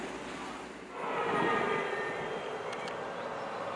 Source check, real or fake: real